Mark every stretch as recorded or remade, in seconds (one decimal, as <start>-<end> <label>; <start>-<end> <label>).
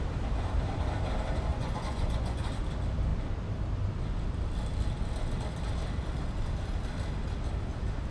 0.0-1.5 recorded; 1.5-2.5 remade; 2.5-8.1 recorded